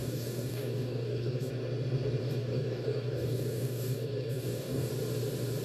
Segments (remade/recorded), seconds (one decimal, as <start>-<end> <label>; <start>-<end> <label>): 0.0-1.5 remade; 1.5-2.2 recorded; 2.2-4.9 remade; 4.9-5.6 recorded